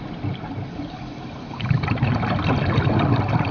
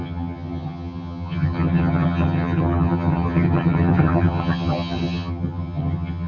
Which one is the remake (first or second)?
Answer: second